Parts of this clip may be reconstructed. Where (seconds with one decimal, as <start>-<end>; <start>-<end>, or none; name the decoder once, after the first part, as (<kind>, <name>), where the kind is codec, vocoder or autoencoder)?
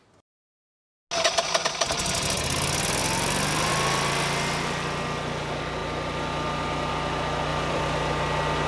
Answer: 3.0-3.7 (vocoder, BigVGAN v2); 7.5-8.1